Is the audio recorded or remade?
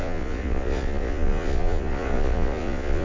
remade